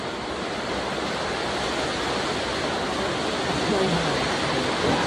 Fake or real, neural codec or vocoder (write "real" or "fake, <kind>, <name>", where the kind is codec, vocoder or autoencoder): real